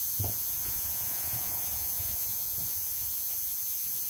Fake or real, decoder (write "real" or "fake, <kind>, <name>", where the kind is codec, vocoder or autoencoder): fake, vocoder, Vocos